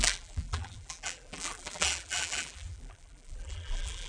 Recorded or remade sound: remade